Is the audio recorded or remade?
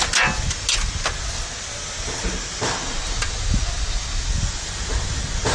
recorded